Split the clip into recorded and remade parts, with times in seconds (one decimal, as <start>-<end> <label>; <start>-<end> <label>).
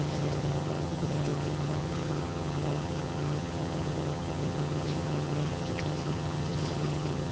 0.0-7.3 remade